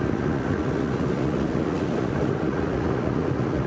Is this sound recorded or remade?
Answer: remade